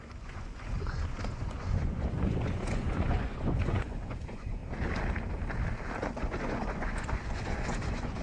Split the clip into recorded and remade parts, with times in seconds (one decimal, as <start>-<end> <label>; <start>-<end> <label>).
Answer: 0.0-4.6 remade; 4.6-6.2 recorded; 6.2-8.2 remade